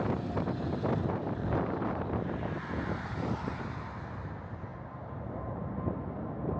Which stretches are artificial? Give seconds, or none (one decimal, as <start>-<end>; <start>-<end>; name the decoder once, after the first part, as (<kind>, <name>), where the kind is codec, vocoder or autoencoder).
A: none